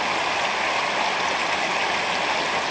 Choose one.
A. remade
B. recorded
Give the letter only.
B